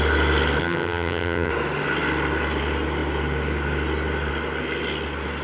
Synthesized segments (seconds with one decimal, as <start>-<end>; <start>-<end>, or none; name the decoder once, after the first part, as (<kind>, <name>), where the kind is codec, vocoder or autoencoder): 0.6-1.5 (vocoder, HiFi-GAN)